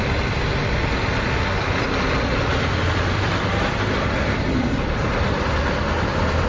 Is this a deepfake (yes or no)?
no